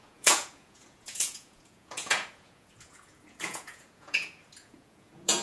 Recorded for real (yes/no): no